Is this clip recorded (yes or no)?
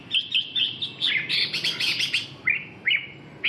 yes